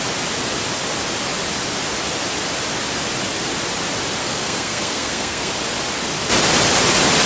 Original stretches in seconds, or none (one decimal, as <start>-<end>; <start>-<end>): 0.0-4.2; 5.5-7.3